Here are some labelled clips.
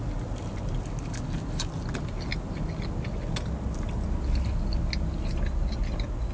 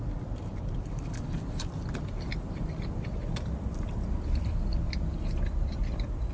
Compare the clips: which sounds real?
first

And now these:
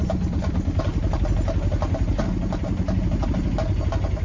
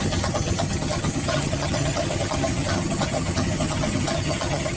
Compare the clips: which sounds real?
first